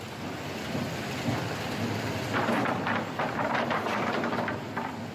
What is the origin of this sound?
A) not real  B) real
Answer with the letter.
B